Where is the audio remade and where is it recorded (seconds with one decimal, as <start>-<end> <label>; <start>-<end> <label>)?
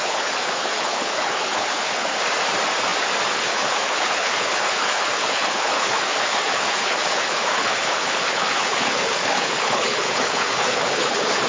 0.0-2.1 remade; 2.1-3.3 recorded; 3.3-11.5 remade